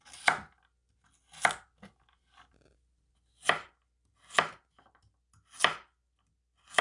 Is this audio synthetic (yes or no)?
no